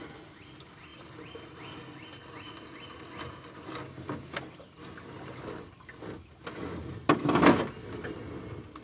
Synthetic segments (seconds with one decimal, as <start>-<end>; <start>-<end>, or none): 3.8-4.4